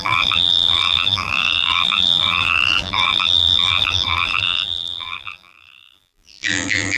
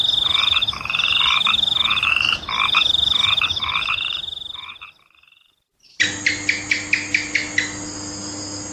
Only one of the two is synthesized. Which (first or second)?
first